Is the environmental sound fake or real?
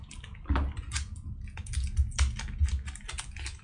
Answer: real